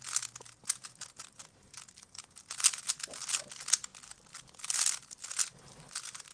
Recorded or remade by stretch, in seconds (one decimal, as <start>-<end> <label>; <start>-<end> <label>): 0.0-6.3 recorded

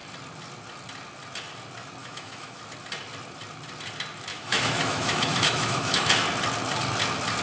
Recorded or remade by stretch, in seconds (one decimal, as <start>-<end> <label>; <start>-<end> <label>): 0.0-2.0 recorded; 2.0-2.6 remade; 2.6-4.3 recorded; 4.3-6.1 remade; 6.1-7.4 recorded

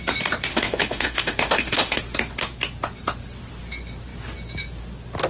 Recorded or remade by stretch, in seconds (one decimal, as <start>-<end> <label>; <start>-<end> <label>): 0.0-0.5 recorded; 0.5-2.0 remade; 2.0-5.3 recorded

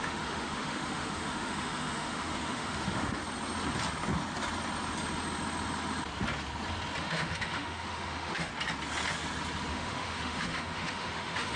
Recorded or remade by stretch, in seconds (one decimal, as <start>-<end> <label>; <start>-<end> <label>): 0.0-3.2 remade; 3.2-7.0 recorded; 7.0-8.5 remade; 8.5-9.7 recorded; 9.7-11.6 remade